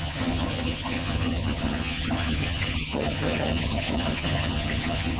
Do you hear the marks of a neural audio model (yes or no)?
yes